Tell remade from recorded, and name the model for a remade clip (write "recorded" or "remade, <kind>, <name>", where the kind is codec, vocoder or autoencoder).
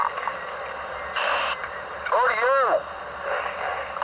recorded